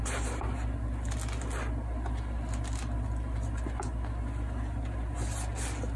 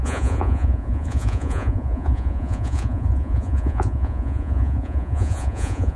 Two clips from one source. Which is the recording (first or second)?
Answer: first